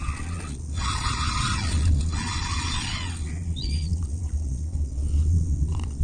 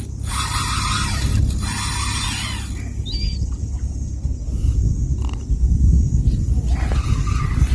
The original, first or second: second